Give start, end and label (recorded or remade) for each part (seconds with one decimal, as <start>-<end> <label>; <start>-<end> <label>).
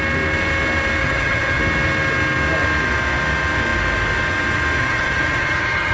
0.0-1.0 recorded; 1.0-1.6 remade; 1.6-4.8 recorded; 4.8-5.9 remade